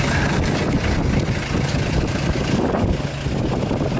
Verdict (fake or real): real